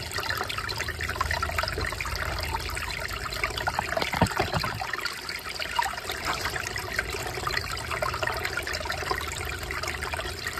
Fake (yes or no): no